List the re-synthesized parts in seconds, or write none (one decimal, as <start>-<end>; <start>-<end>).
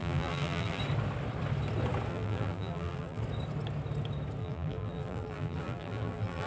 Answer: 0.0-0.8; 2.1-3.2; 4.4-6.5